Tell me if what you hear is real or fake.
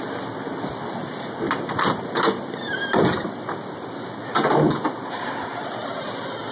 real